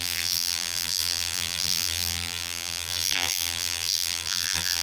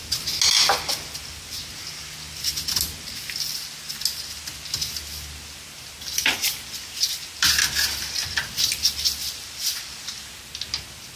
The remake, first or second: first